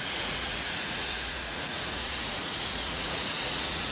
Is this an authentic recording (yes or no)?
no